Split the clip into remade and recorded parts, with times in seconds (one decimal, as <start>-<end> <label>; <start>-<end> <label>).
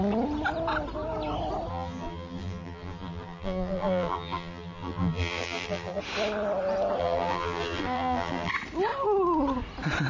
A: 0.0-1.7 recorded; 1.7-6.0 remade; 6.0-7.0 recorded; 7.0-8.5 remade; 8.5-10.1 recorded